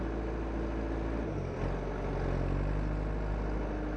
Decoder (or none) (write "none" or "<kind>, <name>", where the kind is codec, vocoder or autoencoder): none